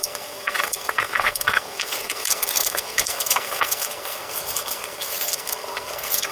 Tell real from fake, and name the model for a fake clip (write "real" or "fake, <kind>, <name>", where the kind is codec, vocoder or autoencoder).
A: fake, codec, SNAC